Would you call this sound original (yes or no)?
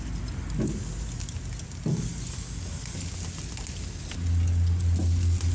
yes